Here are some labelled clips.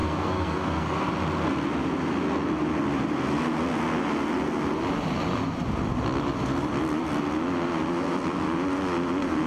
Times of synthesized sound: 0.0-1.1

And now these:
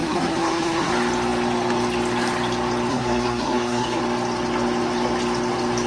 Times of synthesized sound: 0.0-0.9; 2.9-4.0

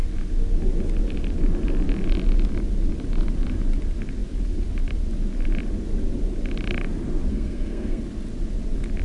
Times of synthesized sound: 7.3-8.0

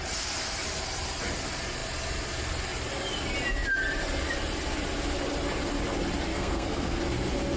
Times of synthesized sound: 6.3-7.0